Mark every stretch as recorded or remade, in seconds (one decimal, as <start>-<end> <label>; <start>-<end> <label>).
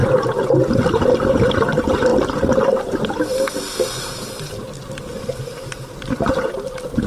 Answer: 0.0-7.1 recorded